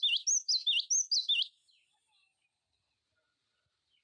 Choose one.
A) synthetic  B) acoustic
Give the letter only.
B